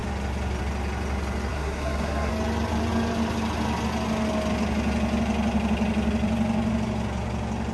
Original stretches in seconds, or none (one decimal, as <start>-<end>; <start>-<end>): 0.0-1.5; 2.3-7.7